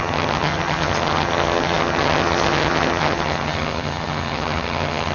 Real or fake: fake